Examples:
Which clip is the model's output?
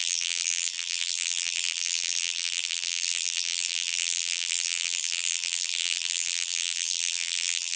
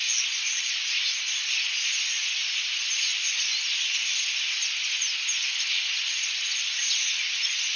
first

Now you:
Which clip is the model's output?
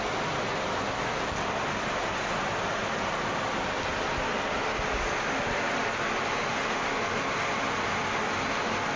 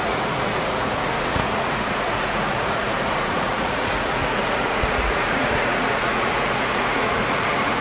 second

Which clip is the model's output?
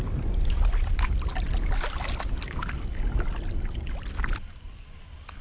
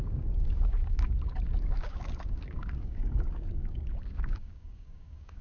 second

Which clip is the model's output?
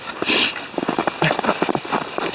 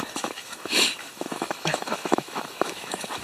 second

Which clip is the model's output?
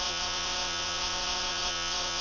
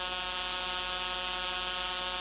first